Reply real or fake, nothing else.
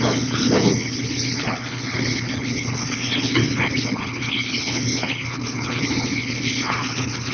fake